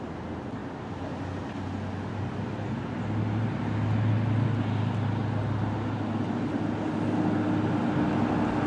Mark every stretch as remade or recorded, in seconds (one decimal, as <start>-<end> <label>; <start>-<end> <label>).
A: 0.0-8.7 recorded